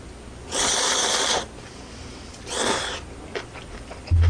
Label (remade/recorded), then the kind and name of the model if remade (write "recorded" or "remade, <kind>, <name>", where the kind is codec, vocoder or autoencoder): recorded